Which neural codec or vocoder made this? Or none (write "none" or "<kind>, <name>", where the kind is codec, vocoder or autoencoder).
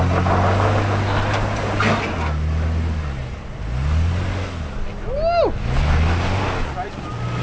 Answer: none